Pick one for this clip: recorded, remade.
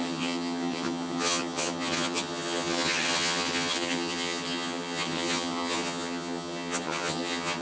remade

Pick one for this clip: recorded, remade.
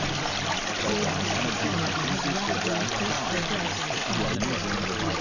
recorded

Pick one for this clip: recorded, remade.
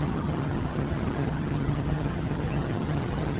remade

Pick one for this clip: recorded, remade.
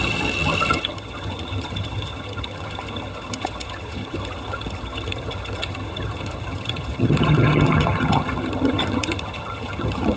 remade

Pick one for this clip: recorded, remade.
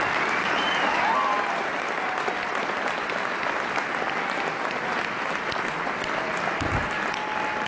recorded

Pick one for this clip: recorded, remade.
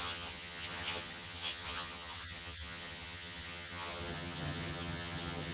remade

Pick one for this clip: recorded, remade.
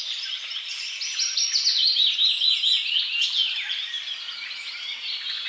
recorded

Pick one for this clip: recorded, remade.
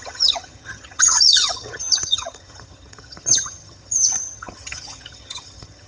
remade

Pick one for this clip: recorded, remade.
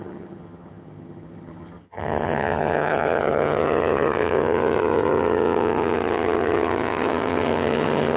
remade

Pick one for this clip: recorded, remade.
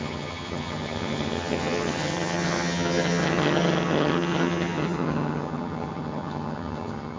remade